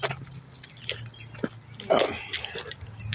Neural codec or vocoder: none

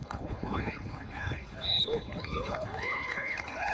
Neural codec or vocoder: codec, HILCodec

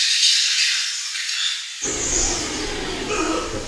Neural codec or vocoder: none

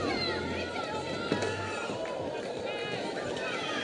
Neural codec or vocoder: none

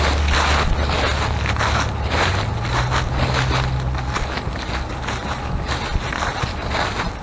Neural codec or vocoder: none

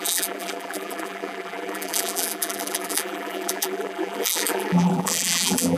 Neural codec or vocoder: vocoder, BigVGAN v2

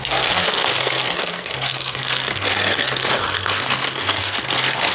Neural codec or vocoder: codec, SNAC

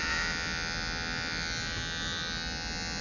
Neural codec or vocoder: none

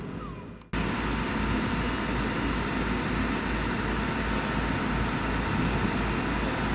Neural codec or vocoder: none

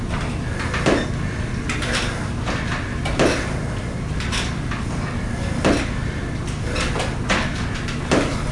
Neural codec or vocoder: none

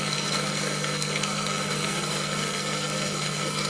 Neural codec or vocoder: codec, SNAC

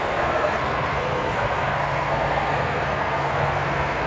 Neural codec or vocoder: codec, SNAC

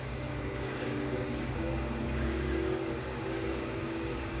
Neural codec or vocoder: codec, DAC